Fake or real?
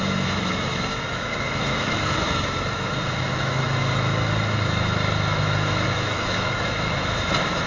fake